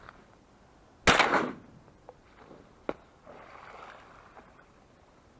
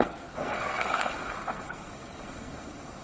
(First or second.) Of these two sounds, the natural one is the first